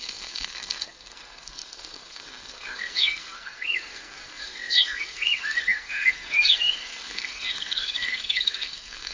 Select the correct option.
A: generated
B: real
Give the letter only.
A